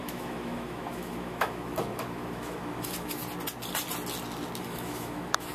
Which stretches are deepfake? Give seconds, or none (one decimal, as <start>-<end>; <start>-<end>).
0.0-3.2; 4.6-5.5